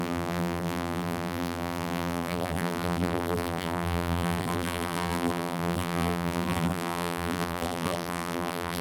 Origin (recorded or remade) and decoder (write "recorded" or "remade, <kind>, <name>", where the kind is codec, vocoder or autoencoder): remade, vocoder, BigVGAN v2